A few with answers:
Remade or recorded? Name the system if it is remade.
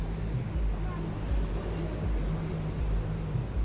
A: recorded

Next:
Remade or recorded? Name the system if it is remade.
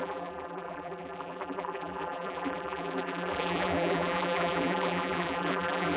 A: remade, vocoder, BigVGAN v2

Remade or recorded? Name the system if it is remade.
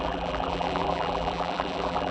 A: remade, vocoder, BigVGAN v2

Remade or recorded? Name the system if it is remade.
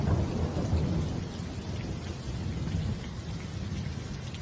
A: recorded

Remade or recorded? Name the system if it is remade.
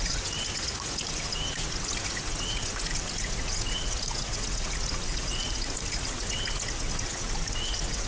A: remade, vocoder, Vocos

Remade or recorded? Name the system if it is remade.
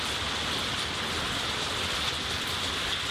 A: recorded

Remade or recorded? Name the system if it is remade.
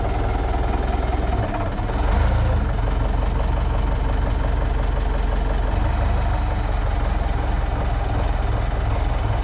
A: recorded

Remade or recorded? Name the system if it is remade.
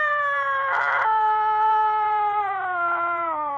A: remade, vocoder, BigVGAN v2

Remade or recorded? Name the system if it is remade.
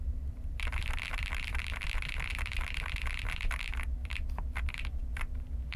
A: remade, vocoder, BigVGAN v2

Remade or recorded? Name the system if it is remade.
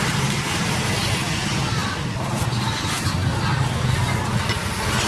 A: recorded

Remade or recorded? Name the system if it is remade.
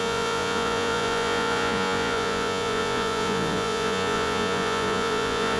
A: remade, vocoder, Vocos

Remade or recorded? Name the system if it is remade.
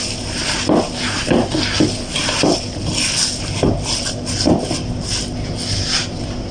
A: recorded